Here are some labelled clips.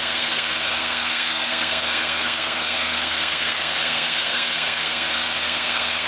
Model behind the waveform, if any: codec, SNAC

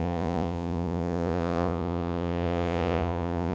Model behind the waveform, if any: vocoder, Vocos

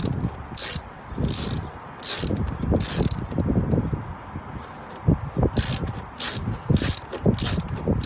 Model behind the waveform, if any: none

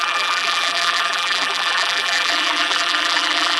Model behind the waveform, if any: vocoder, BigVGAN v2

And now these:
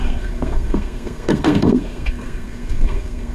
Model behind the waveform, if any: codec, SNAC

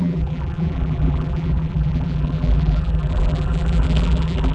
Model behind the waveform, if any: vocoder, BigVGAN v2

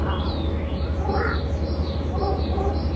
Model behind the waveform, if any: none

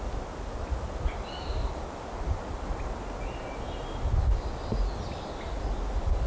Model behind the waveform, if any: none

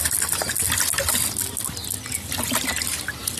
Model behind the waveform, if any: none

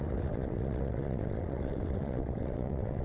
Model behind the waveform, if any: vocoder, WaveNeXt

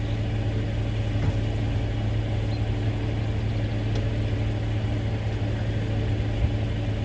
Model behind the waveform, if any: none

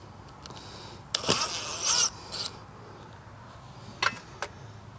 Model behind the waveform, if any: none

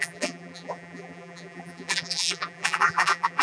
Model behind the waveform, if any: vocoder, BigVGAN v2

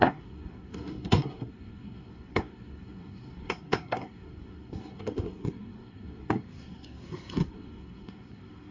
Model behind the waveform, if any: codec, SNAC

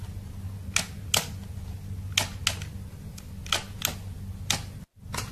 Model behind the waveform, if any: none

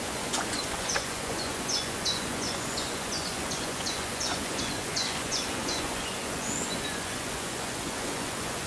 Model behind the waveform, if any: vocoder, Vocos